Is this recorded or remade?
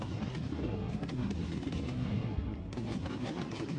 remade